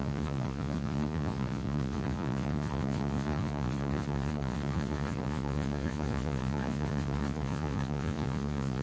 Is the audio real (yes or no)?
no